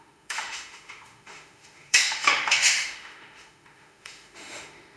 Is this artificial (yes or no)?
yes